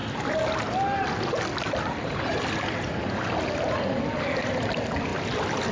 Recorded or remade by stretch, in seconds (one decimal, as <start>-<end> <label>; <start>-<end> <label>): 0.0-5.7 recorded